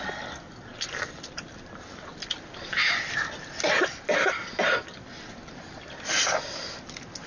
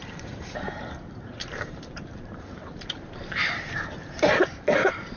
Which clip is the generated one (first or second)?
second